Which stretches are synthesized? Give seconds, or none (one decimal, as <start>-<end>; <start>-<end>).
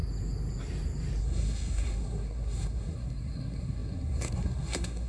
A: 1.2-5.1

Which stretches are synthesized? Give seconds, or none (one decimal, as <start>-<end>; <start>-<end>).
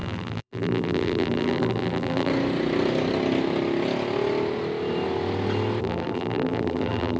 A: 0.0-2.3; 5.8-7.2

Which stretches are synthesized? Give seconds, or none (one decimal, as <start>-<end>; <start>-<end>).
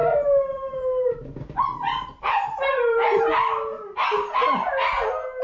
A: 0.0-3.2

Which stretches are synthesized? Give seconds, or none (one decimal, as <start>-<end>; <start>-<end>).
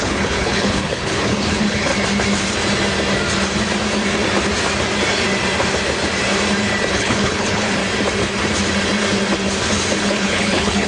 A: 0.0-1.9; 6.9-7.8; 10.0-10.9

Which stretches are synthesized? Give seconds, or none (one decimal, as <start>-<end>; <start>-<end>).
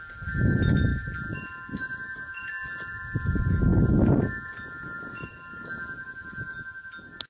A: none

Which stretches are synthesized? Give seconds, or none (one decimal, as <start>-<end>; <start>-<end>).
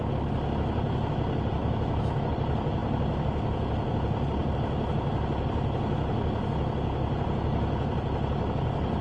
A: 1.6-2.3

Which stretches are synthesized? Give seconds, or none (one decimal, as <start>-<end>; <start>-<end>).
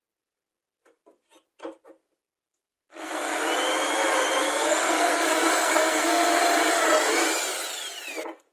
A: 2.7-3.4; 4.4-6.4